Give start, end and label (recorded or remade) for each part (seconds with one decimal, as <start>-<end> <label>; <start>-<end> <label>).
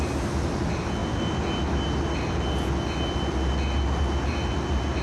0.0-5.0 recorded